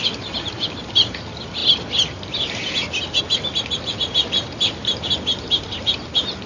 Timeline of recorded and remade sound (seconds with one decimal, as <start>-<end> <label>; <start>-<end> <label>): 0.0-1.6 remade; 1.6-3.2 recorded; 3.2-6.5 remade